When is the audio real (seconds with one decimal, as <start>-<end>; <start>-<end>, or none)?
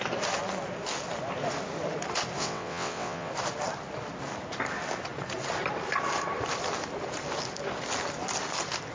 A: 0.0-2.4; 3.3-8.9